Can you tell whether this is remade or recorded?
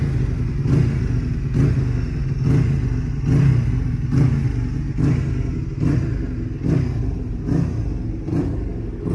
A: recorded